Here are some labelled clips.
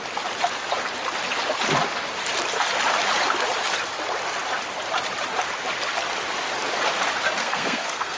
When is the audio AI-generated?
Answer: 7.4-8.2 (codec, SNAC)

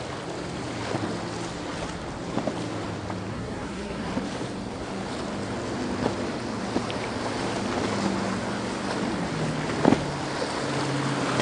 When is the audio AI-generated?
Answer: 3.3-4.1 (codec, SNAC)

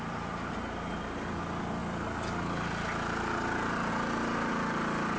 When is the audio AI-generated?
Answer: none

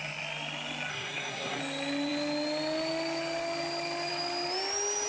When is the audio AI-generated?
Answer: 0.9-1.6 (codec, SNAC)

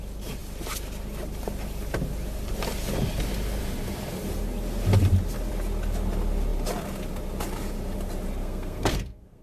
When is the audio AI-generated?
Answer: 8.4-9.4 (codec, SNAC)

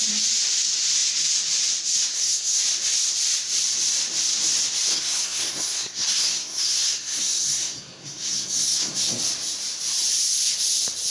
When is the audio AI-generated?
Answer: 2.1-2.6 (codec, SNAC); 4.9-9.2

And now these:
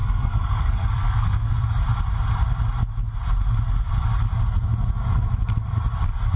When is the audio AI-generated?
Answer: 0.0-1.5 (codec, SNAC)